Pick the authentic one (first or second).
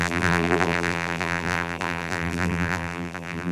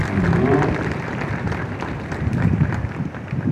second